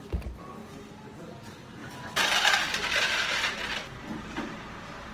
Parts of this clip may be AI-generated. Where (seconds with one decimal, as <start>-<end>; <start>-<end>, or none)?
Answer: 1.8-5.1